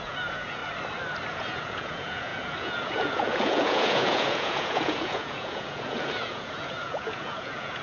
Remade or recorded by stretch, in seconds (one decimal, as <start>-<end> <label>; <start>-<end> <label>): 0.0-0.6 remade; 0.6-1.3 recorded; 1.3-7.8 remade